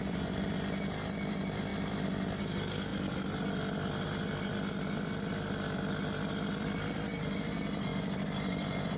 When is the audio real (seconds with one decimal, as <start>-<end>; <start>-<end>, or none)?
none